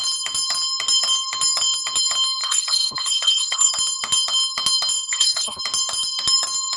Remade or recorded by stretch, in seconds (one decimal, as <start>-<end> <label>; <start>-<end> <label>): 0.0-2.4 recorded; 2.4-3.7 remade; 3.7-5.1 recorded; 5.1-5.6 remade; 5.6-6.8 recorded